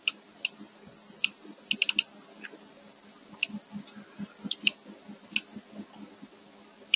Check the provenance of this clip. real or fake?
fake